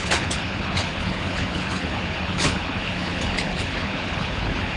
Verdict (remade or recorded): remade